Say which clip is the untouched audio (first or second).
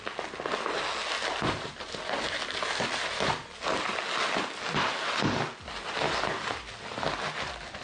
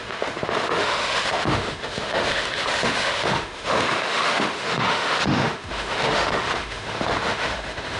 first